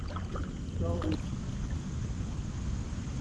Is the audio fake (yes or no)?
no